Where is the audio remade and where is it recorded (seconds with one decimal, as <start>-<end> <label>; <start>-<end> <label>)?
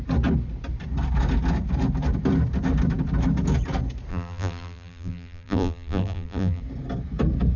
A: 0.0-4.1 recorded; 4.1-6.6 remade; 6.6-7.6 recorded